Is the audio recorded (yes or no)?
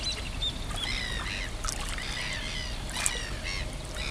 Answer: yes